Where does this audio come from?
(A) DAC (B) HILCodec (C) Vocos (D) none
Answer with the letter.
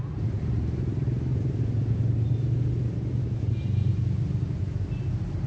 D